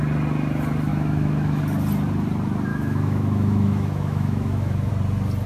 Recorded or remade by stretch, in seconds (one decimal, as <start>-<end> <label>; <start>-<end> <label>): 0.0-0.9 recorded; 0.9-1.6 remade; 1.6-2.7 recorded; 2.7-4.9 remade; 4.9-5.5 recorded